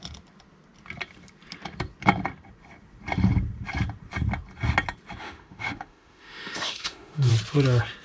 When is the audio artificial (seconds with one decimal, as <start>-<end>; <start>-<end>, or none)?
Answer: 5.2-7.3